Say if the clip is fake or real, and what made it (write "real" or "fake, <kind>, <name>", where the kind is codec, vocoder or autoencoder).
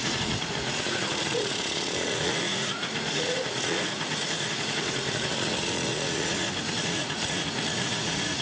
fake, vocoder, Vocos